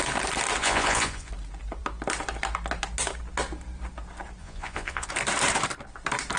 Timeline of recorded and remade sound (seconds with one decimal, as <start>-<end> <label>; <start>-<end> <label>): 0.0-0.6 recorded; 0.6-1.3 remade; 1.3-4.4 recorded; 4.4-5.1 remade; 5.1-6.4 recorded